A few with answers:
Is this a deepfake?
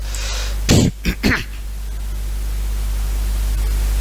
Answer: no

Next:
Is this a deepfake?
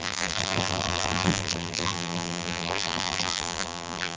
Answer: yes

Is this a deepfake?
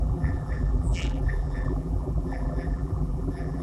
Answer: yes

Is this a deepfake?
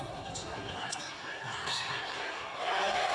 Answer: yes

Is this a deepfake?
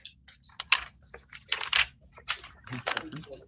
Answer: no